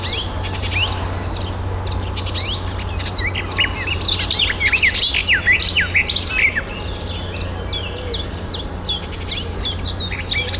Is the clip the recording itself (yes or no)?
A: yes